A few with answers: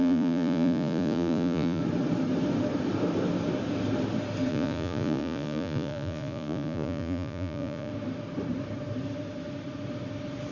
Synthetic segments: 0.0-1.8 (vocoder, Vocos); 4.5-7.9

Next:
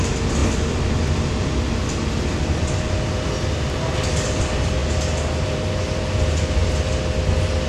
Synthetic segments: none

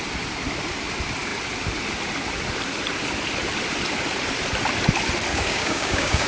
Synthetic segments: 5.3-6.3 (codec, DAC)

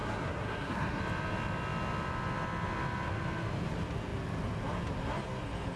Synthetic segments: 0.0-1.0 (codec, SNAC)

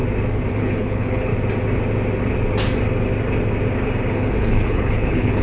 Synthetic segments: 0.5-1.3 (codec, HILCodec); 4.1-5.4

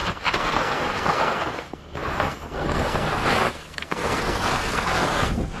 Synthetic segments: 0.0-5.6 (codec, SNAC)

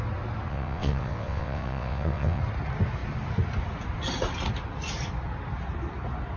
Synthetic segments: 0.5-2.4 (vocoder, WaveNeXt)

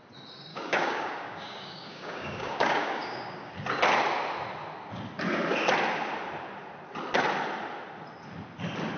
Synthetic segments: 0.5-3.5 (codec, DAC)